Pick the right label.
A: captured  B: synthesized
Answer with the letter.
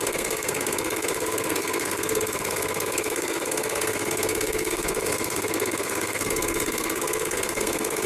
B